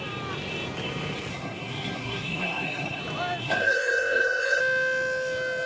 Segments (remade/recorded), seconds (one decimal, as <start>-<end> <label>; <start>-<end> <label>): 0.0-1.3 recorded; 1.3-3.0 remade; 3.0-3.4 recorded; 3.4-4.6 remade; 4.6-5.7 recorded